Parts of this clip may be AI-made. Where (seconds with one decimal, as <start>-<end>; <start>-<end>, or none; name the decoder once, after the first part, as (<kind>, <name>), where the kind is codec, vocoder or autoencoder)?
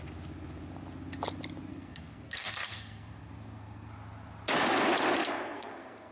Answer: 1.7-3.9 (codec, SNAC); 5.2-6.1